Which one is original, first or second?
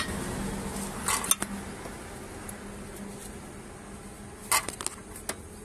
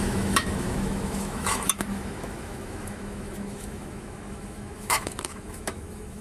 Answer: first